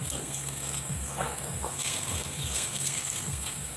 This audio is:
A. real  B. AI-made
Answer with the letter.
B